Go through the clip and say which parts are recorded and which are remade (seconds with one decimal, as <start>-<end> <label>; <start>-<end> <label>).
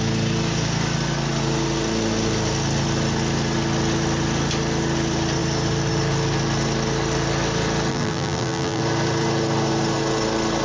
0.0-7.9 recorded; 7.9-8.8 remade; 8.8-10.6 recorded